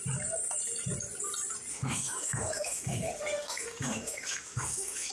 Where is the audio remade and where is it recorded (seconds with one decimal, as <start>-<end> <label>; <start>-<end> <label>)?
0.0-1.7 recorded; 1.7-5.1 remade